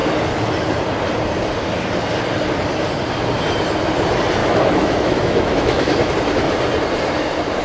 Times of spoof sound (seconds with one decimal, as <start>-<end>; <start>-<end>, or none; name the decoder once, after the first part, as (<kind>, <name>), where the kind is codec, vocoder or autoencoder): 4.4-6.1 (autoencoder, DAC-VAE)